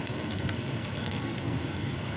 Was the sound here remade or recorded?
remade